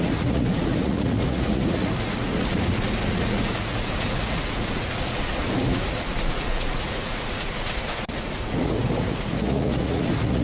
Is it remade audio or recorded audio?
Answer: remade